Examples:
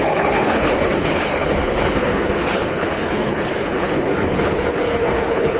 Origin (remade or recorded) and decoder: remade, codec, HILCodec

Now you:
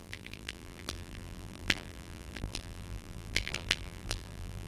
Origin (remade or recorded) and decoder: remade, vocoder, BigVGAN v2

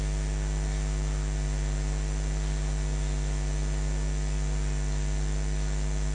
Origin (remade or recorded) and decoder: recorded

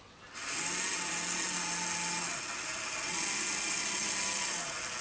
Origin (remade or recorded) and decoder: recorded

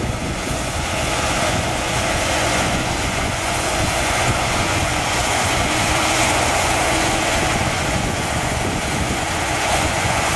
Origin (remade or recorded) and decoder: remade, vocoder, Vocos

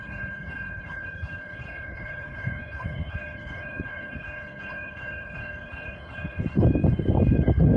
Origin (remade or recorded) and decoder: remade, codec, HILCodec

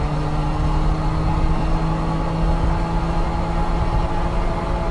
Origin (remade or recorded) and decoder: recorded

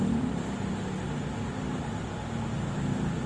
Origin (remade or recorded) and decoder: recorded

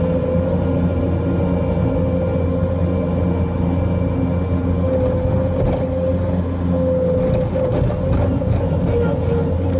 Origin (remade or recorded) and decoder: recorded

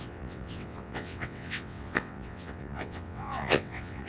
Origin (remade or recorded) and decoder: remade, vocoder, WaveNeXt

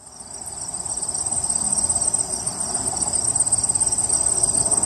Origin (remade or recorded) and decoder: recorded